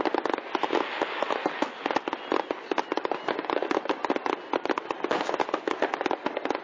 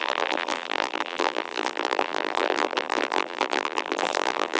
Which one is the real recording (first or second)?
first